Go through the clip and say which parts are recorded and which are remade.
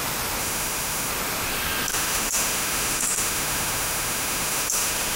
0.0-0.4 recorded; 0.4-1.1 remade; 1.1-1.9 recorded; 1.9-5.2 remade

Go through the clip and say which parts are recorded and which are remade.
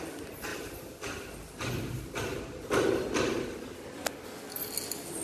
0.0-5.2 recorded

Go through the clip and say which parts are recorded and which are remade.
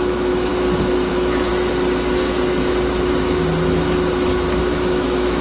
0.0-0.5 remade; 0.5-1.1 recorded; 1.1-1.5 remade; 1.5-4.6 recorded; 4.6-5.4 remade